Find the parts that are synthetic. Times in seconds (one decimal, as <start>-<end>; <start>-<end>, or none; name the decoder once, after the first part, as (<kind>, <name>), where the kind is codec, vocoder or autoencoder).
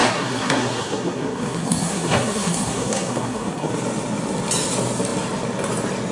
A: 0.0-3.7 (codec, SNAC)